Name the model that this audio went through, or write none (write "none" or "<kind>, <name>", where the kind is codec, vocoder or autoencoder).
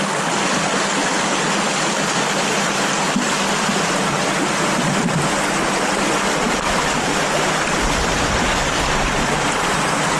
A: none